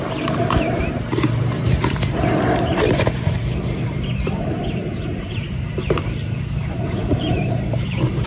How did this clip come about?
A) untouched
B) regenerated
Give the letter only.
B